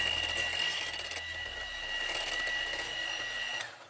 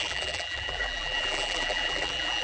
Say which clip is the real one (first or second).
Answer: first